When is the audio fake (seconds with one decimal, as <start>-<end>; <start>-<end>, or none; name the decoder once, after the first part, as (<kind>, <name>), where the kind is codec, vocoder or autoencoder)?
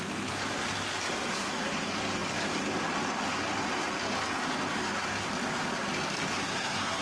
6.4-7.0 (codec, SNAC)